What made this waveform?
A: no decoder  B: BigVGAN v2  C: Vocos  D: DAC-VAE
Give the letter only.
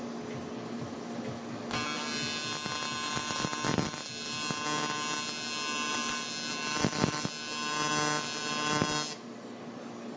A